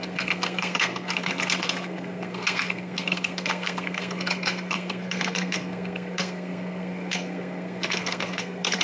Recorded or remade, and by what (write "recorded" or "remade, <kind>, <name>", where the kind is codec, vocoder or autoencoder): remade, codec, SNAC